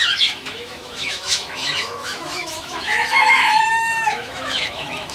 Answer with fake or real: fake